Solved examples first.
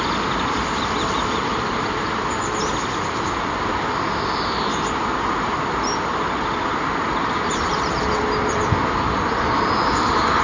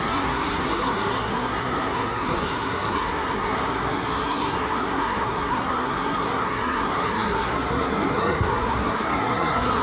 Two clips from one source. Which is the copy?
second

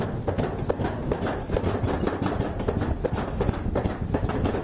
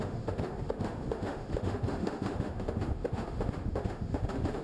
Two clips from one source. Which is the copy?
second